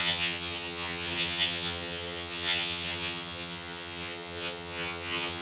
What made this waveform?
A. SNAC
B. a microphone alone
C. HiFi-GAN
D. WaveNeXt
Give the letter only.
C